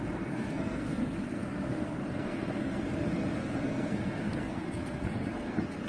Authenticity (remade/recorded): remade